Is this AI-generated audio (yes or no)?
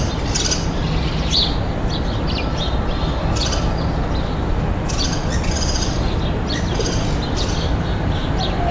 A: no